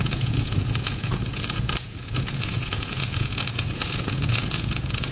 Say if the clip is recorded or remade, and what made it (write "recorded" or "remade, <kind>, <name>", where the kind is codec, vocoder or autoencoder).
remade, vocoder, Vocos